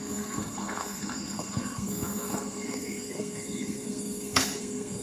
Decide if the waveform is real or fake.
fake